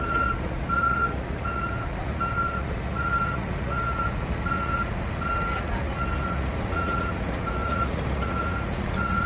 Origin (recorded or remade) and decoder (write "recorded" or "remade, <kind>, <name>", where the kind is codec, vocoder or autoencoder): remade, vocoder, Vocos